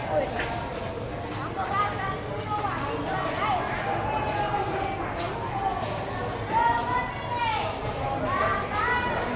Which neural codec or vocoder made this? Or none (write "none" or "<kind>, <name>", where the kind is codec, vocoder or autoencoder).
none